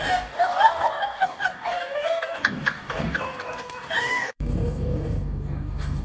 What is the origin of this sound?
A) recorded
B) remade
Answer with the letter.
B